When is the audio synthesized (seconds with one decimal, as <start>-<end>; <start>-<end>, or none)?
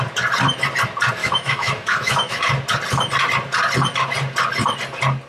1.2-2.5